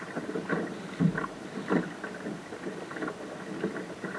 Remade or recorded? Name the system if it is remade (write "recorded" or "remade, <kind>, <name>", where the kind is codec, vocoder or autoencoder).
recorded